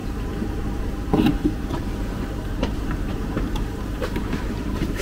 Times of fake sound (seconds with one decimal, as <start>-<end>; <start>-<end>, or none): 0.0-5.0